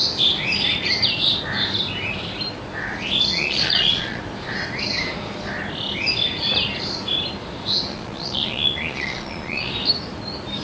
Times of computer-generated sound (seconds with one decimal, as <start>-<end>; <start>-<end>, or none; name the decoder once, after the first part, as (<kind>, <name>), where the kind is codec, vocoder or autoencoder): 3.3-4.2 (vocoder, Vocos); 7.9-9.7